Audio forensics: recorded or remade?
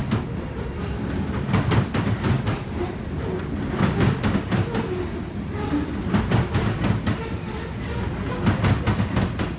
recorded